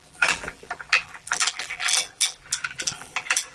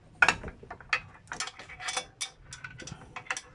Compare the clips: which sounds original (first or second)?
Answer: second